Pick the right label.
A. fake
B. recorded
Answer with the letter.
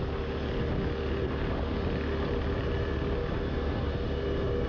B